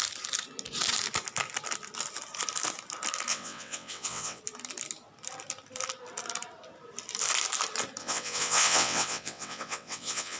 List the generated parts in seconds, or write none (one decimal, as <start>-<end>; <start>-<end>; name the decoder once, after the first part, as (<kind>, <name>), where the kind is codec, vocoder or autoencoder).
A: 3.3-4.4 (vocoder, WaveNeXt); 8.0-10.4